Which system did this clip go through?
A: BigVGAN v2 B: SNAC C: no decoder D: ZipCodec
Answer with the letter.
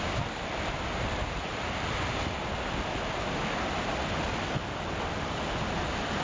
C